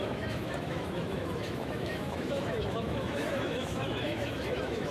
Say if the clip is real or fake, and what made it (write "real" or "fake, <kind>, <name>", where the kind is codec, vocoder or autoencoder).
fake, autoencoder, DAC-VAE